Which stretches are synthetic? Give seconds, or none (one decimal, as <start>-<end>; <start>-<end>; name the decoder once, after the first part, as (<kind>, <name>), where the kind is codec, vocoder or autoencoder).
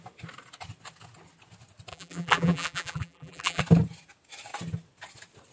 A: 1.9-3.6 (vocoder, BigVGAN v2)